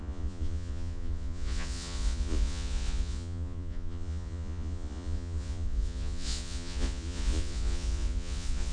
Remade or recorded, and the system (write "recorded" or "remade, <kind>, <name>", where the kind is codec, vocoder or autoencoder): remade, vocoder, Vocos